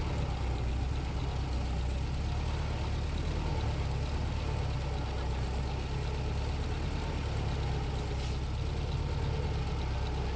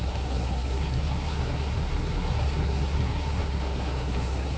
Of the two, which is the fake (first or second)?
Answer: second